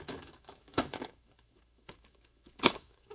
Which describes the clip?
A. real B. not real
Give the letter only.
B